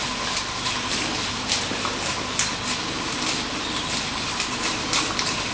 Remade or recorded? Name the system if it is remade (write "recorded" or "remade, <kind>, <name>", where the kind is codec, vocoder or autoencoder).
recorded